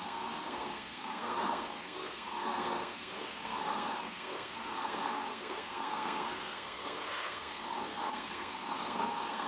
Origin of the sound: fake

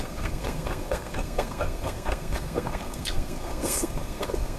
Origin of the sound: fake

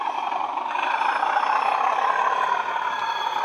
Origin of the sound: real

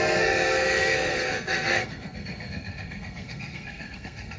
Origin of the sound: fake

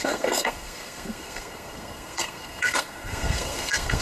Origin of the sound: fake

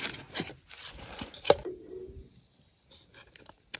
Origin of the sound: real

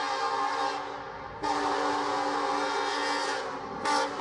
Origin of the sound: real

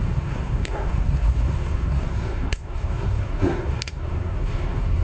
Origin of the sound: fake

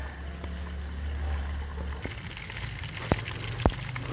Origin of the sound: real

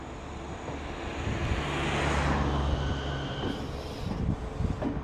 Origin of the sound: real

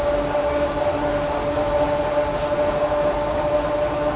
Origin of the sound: real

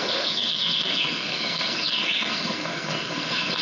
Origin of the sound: fake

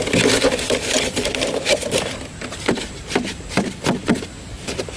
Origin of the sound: real